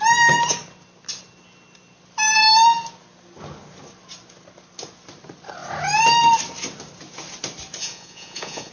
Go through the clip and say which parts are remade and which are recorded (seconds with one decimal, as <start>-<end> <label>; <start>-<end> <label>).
0.0-7.8 recorded; 7.8-8.7 remade